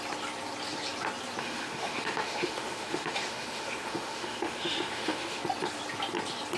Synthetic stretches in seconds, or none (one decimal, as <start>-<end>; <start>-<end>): 1.4-5.4